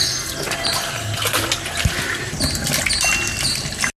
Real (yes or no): yes